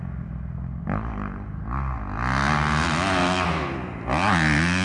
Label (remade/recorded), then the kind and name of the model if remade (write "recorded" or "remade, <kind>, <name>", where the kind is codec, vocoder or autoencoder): recorded